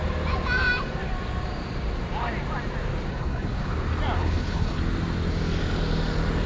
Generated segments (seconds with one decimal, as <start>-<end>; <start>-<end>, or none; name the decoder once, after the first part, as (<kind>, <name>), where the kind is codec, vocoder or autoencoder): 3.1-3.7 (codec, HILCodec); 4.2-4.8